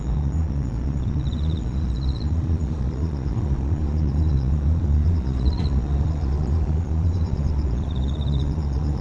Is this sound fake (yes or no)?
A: yes